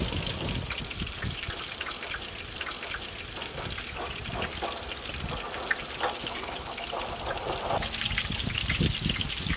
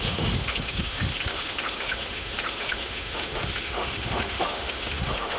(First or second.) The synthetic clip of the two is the second